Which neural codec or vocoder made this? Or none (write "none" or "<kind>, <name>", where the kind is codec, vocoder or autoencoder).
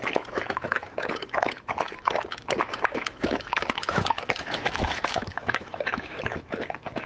autoencoder, DAC-VAE